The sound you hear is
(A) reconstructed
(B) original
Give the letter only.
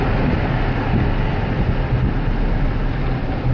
B